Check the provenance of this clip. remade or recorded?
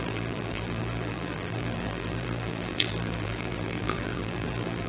remade